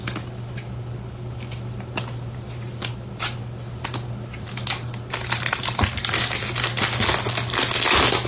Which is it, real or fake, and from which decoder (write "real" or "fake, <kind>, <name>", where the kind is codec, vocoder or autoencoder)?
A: real